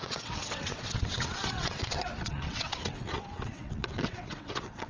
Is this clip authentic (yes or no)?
no